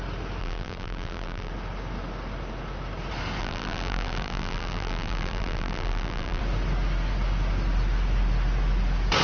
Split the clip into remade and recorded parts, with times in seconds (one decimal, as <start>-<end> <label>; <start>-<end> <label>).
0.0-0.4 recorded; 0.4-1.5 remade; 1.5-3.4 recorded; 3.4-6.4 remade; 6.4-9.2 recorded